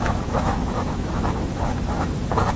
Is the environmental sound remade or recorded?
remade